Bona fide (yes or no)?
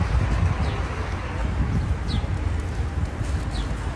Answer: yes